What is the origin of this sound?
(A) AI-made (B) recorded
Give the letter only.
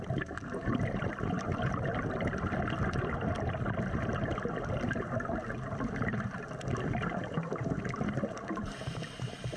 A